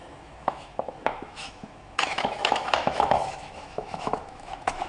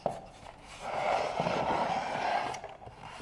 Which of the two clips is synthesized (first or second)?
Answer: first